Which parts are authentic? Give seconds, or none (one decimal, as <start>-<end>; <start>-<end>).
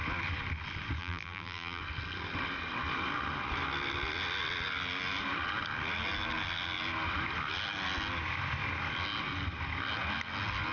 0.0-1.0; 1.8-10.7